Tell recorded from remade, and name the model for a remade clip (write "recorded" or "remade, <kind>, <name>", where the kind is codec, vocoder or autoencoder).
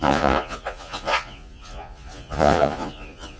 remade, vocoder, Vocos